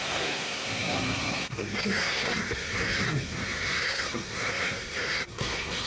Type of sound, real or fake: fake